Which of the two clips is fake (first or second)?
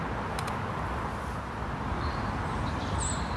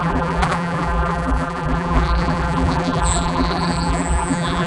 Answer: second